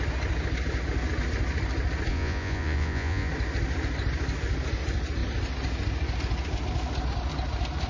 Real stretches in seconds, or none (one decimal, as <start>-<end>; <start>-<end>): 0.0-2.1; 3.3-7.9